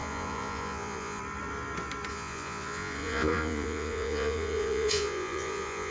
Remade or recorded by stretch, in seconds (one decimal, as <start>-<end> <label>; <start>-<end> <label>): 0.0-1.2 remade; 1.2-2.1 recorded; 2.1-5.9 remade